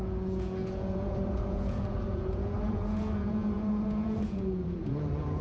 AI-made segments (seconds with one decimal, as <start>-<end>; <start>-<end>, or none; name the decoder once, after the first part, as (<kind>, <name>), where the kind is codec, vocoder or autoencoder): 0.0-5.4 (vocoder, Vocos)